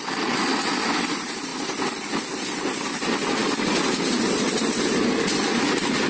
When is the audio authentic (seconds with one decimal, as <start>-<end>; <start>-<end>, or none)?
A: 0.0-1.5; 2.3-3.4; 4.2-6.1